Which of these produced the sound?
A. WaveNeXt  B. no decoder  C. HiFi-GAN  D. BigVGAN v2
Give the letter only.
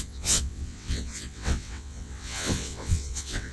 A